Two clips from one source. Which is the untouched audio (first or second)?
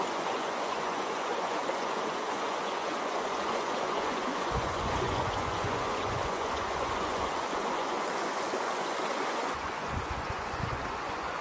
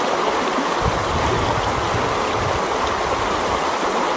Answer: second